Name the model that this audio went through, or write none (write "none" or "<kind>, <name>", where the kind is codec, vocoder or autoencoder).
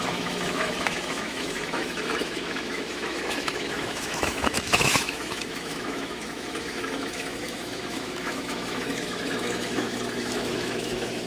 autoencoder, DAC-VAE